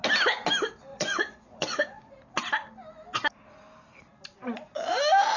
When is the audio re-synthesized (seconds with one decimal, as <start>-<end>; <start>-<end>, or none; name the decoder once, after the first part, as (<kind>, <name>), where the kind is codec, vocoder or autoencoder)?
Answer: 0.9-2.1 (vocoder, Vocos)